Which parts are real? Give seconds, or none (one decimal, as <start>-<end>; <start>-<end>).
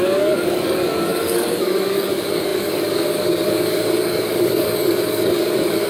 none